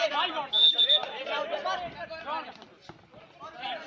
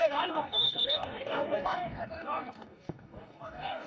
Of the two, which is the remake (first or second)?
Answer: second